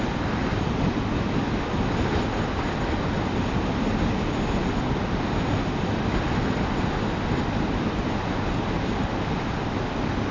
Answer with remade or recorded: recorded